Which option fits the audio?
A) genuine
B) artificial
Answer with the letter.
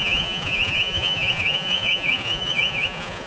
B